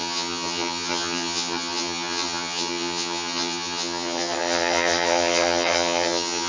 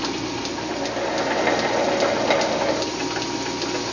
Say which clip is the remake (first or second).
first